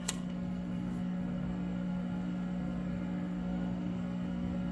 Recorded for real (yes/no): no